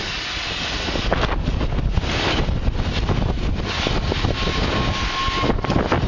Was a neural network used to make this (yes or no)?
no